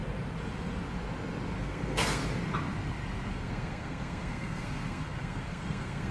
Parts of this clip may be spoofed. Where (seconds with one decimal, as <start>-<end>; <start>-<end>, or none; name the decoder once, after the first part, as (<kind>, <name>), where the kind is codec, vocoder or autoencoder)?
1.6-2.2 (codec, SNAC); 3.3-6.1